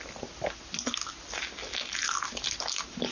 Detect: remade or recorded recorded